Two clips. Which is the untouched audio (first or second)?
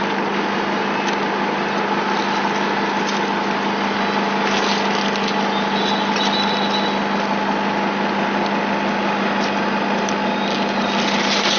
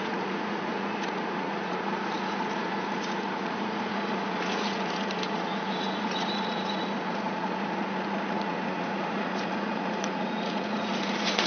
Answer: first